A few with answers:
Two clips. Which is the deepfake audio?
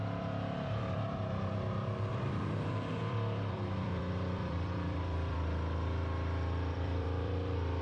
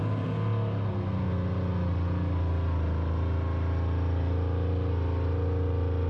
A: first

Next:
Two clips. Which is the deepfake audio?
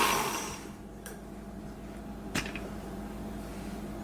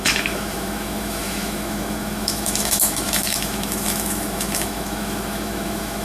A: second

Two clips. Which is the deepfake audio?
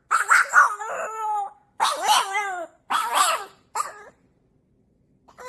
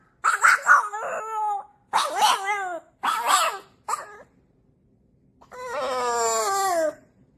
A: first